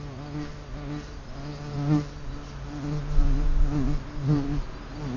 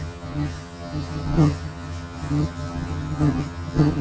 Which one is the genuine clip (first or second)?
first